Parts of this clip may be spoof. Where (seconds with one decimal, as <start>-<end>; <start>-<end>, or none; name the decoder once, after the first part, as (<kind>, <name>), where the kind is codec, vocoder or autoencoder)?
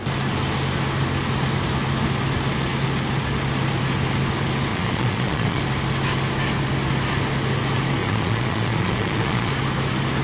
4.7-5.6 (vocoder, Vocos); 8.0-9.5